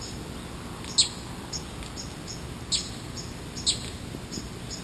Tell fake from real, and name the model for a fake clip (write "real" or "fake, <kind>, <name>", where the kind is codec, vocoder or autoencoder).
real